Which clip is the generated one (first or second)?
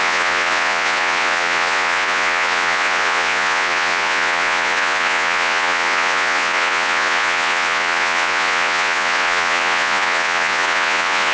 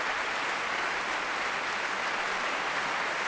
first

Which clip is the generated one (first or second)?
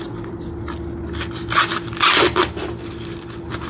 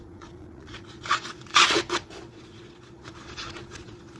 second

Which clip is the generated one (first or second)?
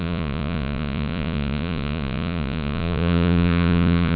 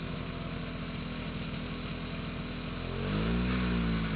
first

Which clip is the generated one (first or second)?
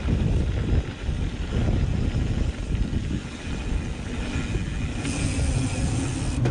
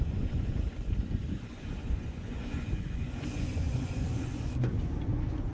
second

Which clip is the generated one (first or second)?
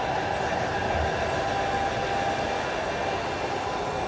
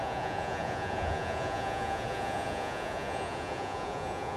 second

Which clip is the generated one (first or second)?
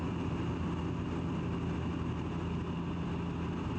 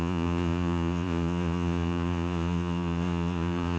second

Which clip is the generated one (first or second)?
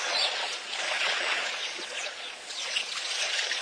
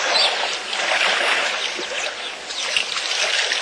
first